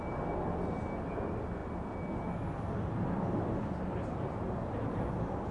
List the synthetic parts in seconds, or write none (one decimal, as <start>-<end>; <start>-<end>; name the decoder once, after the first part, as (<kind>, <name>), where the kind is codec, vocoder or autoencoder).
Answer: none